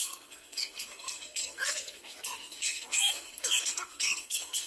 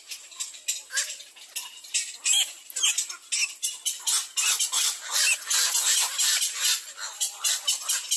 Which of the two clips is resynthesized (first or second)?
first